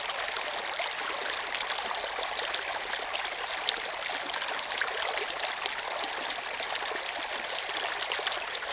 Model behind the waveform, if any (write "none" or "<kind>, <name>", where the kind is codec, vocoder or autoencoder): none